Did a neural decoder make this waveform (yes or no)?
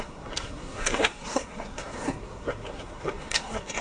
yes